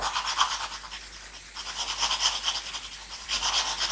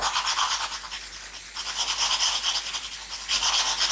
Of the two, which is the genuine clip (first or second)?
second